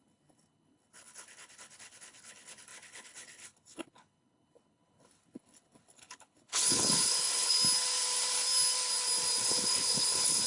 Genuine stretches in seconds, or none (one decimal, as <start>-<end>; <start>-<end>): 7.6-9.4